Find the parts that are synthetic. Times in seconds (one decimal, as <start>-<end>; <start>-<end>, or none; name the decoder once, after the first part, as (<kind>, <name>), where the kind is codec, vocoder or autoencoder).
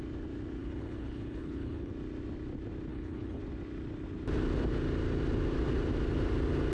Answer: 0.6-1.9 (codec, HILCodec); 2.9-3.4